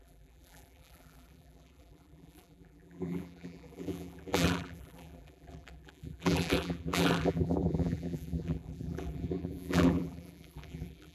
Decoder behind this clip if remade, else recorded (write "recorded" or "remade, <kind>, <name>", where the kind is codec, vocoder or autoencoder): remade, vocoder, BigVGAN v2